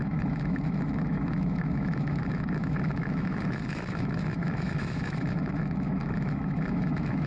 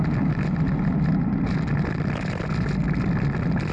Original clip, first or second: second